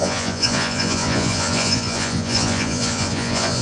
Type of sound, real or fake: fake